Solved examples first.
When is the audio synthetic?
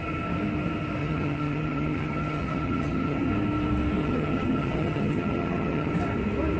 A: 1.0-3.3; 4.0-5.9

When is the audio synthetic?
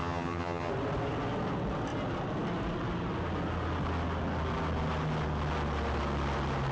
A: 0.0-0.7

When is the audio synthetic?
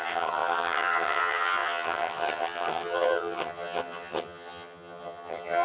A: 0.0-5.6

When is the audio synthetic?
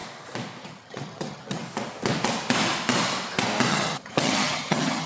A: 0.6-1.6; 3.7-5.1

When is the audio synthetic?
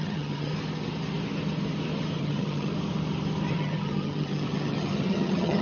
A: 0.0-0.5; 2.2-2.7; 3.5-5.6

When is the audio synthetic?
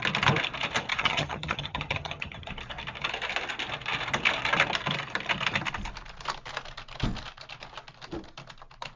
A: 0.9-2.5